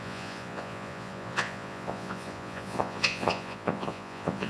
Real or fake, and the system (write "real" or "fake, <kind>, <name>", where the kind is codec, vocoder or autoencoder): fake, vocoder, Vocos